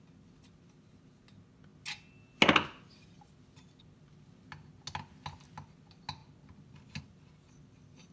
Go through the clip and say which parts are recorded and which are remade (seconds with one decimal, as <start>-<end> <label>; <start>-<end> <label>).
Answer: 0.0-8.1 recorded